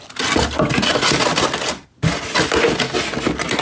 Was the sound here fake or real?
real